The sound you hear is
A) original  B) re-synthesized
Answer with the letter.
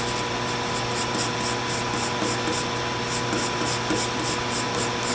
A